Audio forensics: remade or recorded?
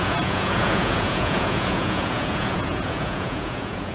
remade